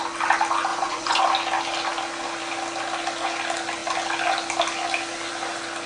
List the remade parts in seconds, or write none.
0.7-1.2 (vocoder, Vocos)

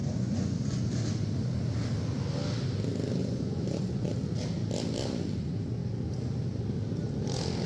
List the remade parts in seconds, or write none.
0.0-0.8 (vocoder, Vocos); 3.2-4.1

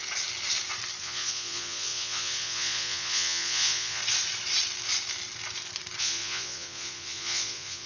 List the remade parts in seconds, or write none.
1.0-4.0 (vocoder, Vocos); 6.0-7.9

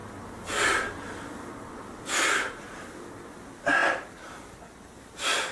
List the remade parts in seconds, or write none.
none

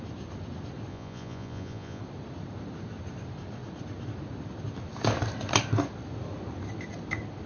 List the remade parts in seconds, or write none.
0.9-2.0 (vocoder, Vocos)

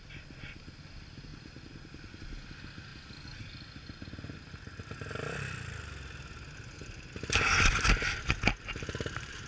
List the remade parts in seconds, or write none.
none

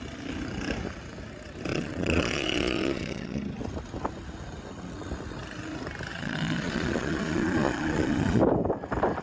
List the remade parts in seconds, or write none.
1.7-3.4 (vocoder, Vocos); 6.1-8.4

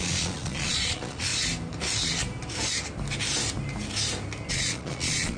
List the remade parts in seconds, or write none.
0.0-1.3 (vocoder, Vocos); 4.5-5.4